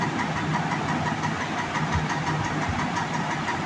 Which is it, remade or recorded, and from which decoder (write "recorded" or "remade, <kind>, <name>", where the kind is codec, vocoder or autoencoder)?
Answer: recorded